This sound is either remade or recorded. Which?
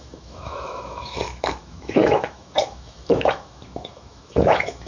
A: remade